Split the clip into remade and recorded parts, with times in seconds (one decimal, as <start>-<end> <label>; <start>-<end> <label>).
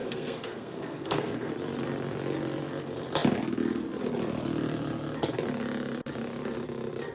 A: 0.0-1.5 remade; 1.5-7.1 recorded